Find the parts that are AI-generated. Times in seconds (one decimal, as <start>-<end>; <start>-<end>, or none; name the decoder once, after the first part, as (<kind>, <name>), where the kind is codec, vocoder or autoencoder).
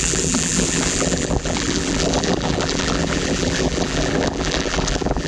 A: 0.0-5.3 (vocoder, BigVGAN v2)